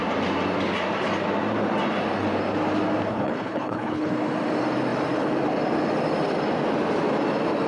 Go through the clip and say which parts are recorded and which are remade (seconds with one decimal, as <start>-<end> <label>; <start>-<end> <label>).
0.0-3.1 recorded; 3.1-4.1 remade; 4.1-7.7 recorded